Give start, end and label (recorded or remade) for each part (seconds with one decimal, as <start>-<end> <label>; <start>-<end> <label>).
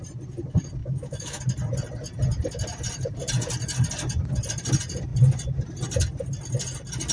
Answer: 0.0-0.8 recorded; 0.8-1.4 remade; 1.4-7.1 recorded